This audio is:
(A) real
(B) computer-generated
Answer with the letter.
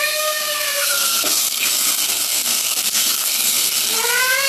B